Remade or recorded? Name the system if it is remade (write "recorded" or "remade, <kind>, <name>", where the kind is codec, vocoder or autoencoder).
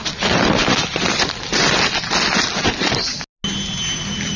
recorded